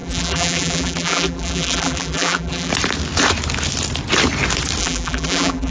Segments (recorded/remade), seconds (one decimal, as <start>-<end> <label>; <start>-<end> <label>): 0.0-2.7 remade; 2.7-4.8 recorded; 4.8-5.7 remade